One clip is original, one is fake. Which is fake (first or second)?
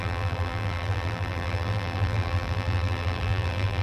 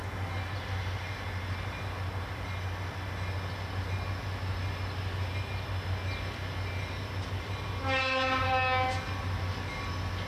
first